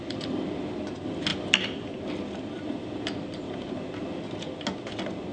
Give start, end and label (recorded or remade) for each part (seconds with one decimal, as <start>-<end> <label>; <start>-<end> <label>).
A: 0.0-5.3 recorded